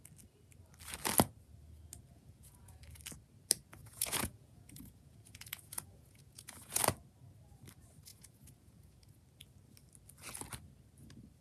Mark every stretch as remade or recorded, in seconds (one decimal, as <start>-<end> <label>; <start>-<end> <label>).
0.0-2.1 recorded; 2.1-2.8 remade; 2.8-3.8 recorded; 3.8-6.8 remade; 6.8-8.1 recorded; 8.1-9.1 remade; 9.1-11.4 recorded